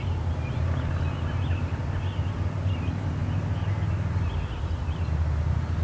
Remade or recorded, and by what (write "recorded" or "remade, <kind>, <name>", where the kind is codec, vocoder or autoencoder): recorded